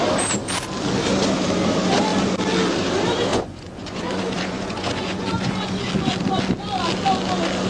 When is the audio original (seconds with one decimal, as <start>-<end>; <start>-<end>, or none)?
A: 0.0-3.3; 5.9-7.7